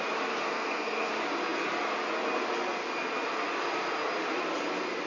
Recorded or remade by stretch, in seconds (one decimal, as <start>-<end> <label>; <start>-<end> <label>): 0.0-0.4 recorded; 0.4-1.1 remade; 1.1-5.1 recorded